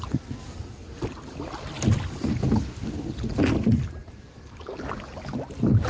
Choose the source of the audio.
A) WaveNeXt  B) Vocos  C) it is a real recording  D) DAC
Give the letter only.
C